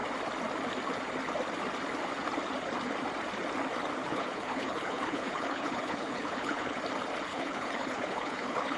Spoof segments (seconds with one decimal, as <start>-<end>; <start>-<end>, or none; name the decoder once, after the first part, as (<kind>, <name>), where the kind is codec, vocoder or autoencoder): 4.0-6.8 (codec, HILCodec); 7.3-8.8